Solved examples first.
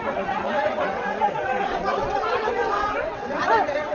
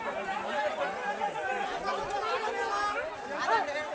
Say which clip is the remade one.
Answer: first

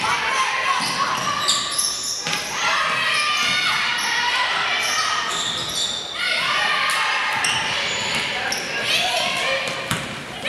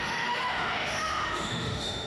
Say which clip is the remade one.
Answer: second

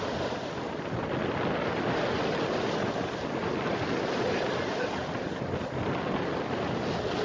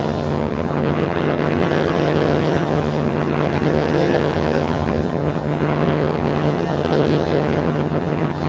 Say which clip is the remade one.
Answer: second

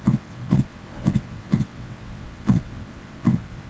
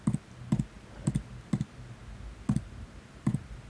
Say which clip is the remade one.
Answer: first